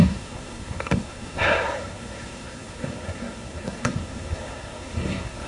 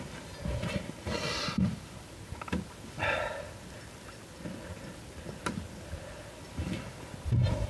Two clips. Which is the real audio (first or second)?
second